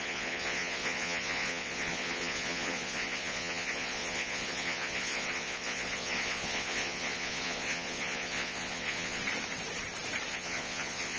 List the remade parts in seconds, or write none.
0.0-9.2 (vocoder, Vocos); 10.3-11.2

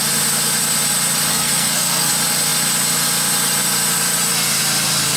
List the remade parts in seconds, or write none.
1.3-2.1 (codec, SNAC)

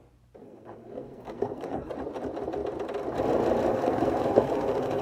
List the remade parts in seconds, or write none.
0.4-1.9 (codec, SNAC); 3.7-5.0